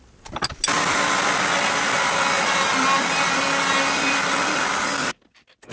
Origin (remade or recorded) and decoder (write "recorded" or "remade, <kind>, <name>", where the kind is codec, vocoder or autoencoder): recorded